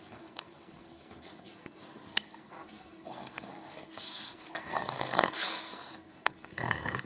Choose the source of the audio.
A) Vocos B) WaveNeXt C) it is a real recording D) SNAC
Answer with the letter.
D